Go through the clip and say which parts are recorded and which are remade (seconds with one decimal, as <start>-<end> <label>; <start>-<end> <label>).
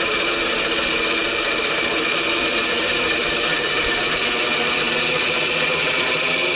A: 0.0-1.2 recorded; 1.2-4.2 remade; 4.2-6.6 recorded